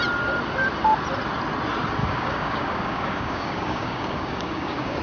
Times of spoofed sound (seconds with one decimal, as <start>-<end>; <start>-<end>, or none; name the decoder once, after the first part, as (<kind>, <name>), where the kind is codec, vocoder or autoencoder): 2.0-5.0 (codec, DAC)